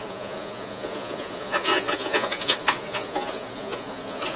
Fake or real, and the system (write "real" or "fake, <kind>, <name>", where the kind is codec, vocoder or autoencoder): fake, vocoder, Vocos